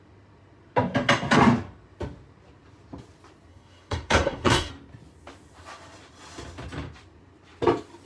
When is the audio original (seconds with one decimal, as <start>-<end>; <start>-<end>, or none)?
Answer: 0.0-3.5; 4.7-8.1